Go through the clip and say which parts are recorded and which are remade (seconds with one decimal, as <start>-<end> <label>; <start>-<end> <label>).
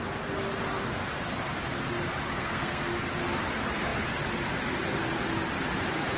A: 0.0-2.3 recorded; 2.3-2.9 remade; 2.9-6.2 recorded